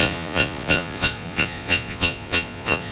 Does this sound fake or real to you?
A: fake